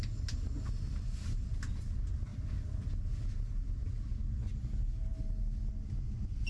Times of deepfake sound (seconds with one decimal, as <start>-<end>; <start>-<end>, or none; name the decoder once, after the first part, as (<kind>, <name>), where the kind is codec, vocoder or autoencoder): none